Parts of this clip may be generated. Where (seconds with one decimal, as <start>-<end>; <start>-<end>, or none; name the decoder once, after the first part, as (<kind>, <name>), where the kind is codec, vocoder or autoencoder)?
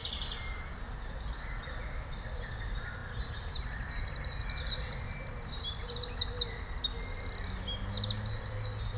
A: none